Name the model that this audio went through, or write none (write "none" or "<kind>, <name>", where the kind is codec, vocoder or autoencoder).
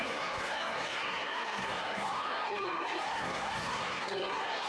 codec, SNAC